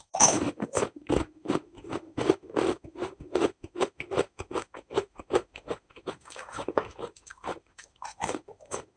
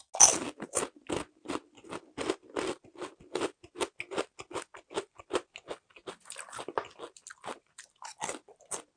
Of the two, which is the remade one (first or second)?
first